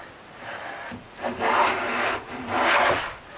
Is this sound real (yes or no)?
no